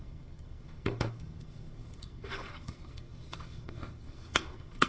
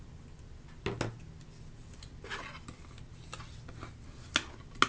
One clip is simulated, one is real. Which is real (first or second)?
second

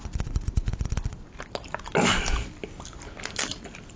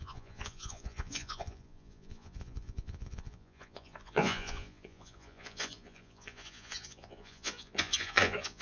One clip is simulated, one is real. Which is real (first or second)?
first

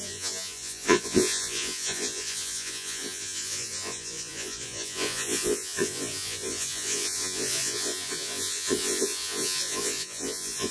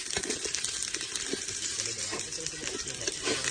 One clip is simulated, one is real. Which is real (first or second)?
second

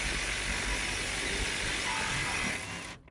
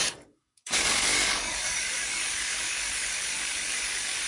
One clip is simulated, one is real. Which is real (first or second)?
first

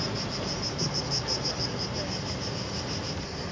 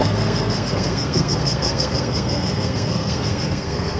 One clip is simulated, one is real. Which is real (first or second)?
first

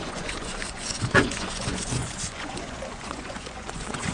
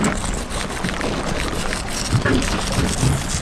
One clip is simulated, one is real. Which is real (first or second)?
second